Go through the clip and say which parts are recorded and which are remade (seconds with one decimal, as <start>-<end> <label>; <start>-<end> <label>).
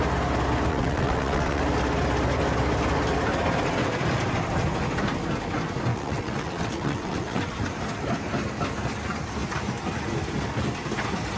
0.0-0.7 recorded; 0.7-1.6 remade; 1.6-5.9 recorded; 5.9-7.7 remade; 7.7-11.4 recorded